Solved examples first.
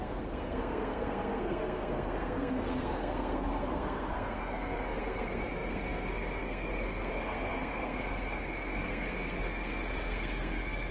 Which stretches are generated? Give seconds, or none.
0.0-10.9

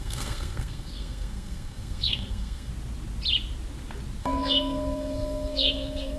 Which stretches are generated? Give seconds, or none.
0.0-2.7; 4.2-6.2

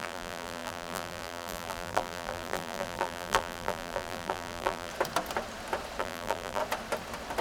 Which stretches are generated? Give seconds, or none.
0.0-4.9; 6.0-6.6